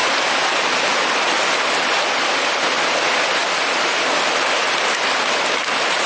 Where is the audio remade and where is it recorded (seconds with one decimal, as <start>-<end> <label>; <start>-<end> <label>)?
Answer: 0.0-6.1 recorded